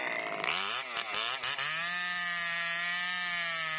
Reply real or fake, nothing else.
real